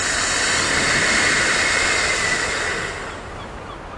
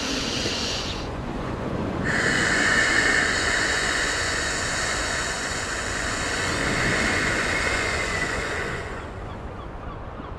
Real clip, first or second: first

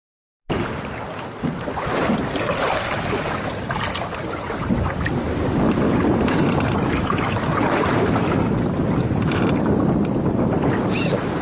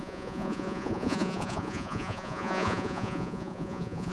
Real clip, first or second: first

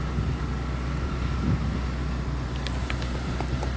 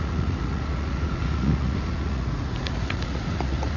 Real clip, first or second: first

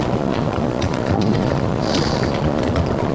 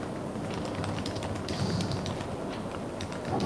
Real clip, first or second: second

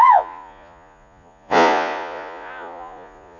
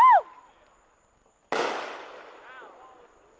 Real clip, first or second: second